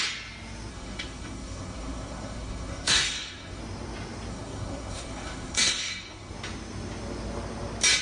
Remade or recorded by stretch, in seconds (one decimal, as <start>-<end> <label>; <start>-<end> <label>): 0.0-0.7 recorded; 0.7-3.6 remade; 3.6-4.3 recorded; 4.3-6.3 remade; 6.3-8.0 recorded